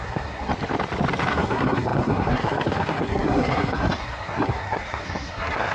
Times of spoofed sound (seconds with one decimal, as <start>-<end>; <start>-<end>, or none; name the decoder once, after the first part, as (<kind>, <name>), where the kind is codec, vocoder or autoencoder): 0.0-0.5 (codec, SNAC); 1.3-5.7